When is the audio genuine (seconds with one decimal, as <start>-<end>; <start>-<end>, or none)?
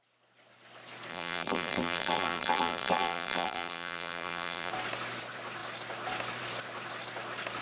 0.0-1.1; 4.7-7.6